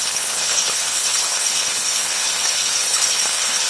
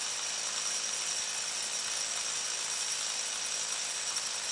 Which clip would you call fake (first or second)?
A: first